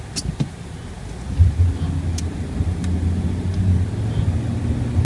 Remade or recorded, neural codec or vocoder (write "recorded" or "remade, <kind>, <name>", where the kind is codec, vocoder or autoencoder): recorded